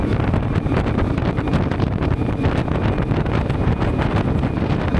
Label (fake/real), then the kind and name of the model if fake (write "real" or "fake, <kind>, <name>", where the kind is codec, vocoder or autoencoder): real